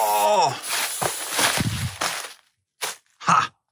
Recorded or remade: recorded